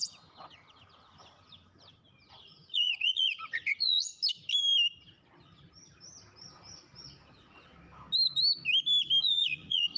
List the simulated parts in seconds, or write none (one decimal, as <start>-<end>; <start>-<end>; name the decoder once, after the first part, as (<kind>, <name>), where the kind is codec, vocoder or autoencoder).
2.3-4.1 (vocoder, Vocos); 9.2-10.0